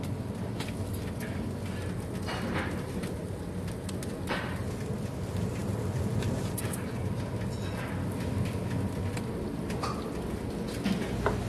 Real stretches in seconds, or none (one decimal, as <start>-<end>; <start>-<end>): 0.0-5.6; 6.3-11.5